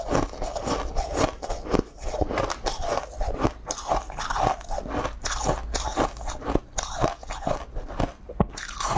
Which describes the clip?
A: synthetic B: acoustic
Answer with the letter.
B